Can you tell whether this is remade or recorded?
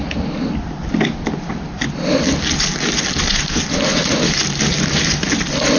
recorded